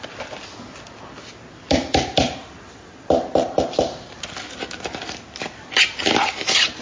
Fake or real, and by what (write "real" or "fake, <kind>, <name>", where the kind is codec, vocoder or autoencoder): real